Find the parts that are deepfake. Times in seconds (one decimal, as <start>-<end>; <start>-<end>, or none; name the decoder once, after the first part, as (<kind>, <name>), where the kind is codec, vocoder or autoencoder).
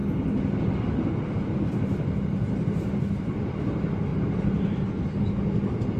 0.0-3.6 (vocoder, BigVGAN v2); 4.1-5.1